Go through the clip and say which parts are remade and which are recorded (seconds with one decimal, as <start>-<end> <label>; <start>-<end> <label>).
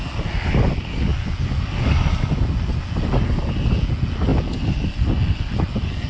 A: 0.0-6.1 recorded